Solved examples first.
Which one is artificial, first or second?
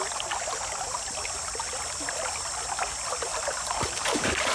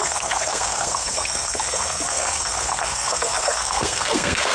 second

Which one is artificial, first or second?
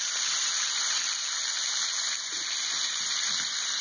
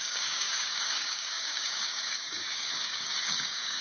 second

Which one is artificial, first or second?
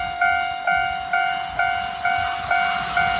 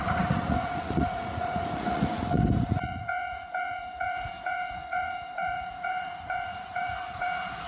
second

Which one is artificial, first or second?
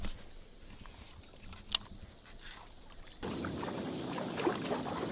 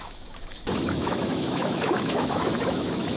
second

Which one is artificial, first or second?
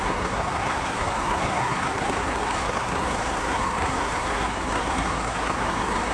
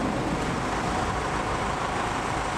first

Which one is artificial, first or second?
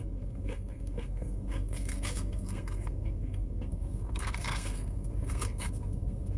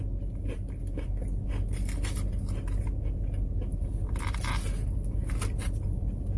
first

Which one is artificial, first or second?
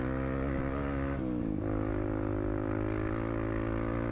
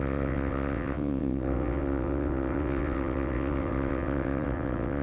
second